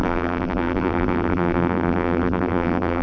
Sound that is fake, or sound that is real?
fake